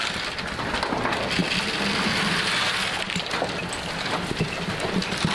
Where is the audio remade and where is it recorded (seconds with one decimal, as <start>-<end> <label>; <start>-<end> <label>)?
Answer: 0.0-5.3 recorded